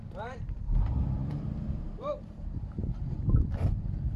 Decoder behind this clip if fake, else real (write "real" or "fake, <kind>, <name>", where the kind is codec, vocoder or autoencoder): fake, vocoder, BigVGAN v2